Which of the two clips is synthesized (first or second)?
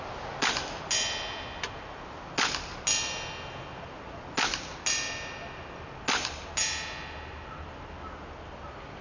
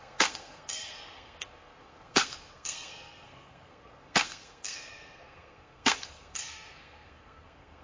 second